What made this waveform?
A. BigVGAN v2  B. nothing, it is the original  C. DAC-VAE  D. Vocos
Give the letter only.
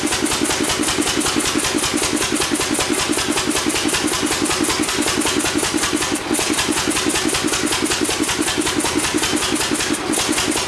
B